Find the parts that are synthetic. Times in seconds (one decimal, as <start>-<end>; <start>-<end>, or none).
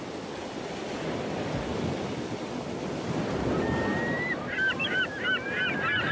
0.4-1.5; 3.9-5.2